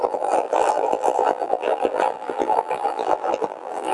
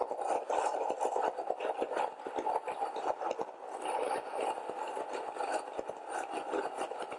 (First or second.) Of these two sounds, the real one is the second